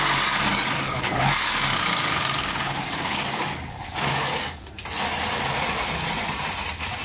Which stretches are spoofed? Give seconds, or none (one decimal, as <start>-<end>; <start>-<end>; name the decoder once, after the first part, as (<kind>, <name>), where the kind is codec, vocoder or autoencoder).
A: 0.5-4.7 (codec, DAC)